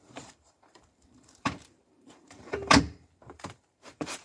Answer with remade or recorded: remade